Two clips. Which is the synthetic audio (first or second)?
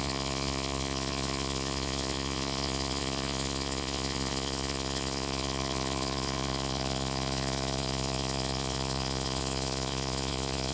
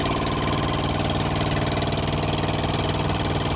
first